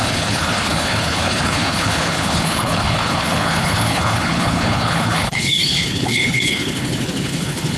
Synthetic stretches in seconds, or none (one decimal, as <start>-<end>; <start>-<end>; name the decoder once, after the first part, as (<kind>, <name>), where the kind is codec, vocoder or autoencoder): 0.0-7.8 (codec, HILCodec)